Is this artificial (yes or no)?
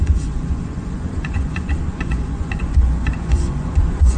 yes